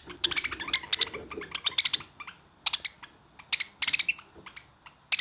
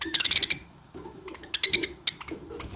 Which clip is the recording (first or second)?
first